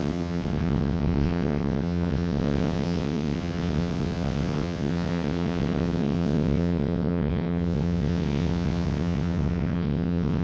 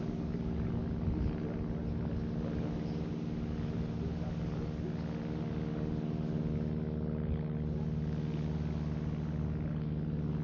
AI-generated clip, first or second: first